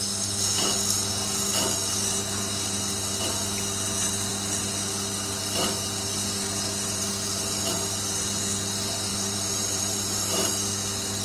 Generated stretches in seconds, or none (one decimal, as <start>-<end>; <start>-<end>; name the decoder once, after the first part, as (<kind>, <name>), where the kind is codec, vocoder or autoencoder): 9.1-10.5 (vocoder, BigVGAN v2)